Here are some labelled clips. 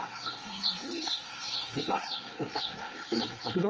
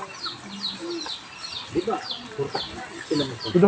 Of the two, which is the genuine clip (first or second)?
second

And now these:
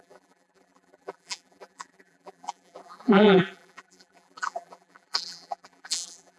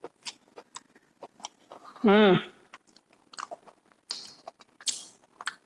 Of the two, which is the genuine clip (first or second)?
second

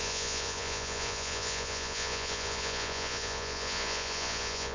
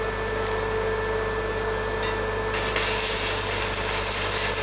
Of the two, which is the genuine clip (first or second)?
second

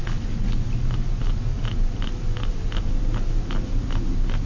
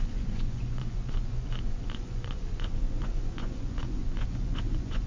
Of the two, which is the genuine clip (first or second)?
first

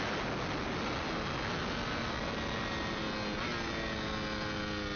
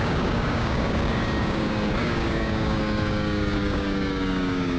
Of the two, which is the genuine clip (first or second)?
first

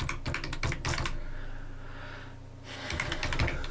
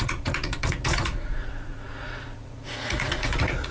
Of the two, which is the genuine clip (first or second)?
first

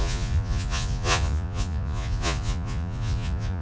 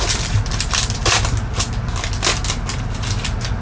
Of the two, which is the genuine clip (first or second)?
second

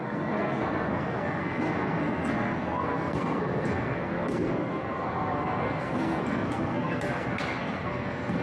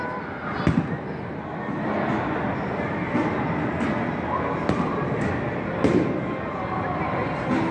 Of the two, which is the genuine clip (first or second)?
second